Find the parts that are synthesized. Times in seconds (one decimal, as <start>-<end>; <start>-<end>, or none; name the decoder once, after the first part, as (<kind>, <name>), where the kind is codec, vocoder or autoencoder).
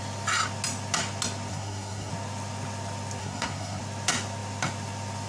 1.5-2.1 (codec, SNAC); 3.2-3.8